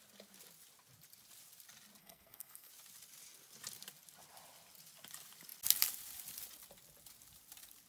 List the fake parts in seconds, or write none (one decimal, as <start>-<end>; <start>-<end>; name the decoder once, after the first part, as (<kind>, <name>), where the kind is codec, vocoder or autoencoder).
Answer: 2.0-2.7 (codec, SNAC)